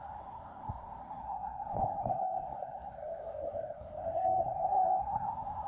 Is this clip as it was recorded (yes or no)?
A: no